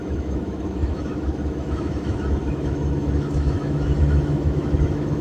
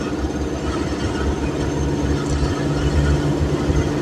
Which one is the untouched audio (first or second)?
second